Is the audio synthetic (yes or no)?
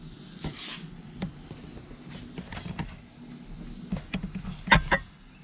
no